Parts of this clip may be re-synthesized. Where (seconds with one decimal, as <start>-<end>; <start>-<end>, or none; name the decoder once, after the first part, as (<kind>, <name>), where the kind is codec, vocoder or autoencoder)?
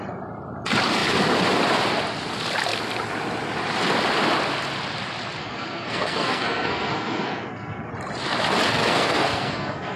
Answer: 5.4-7.9 (codec, SNAC); 8.7-10.0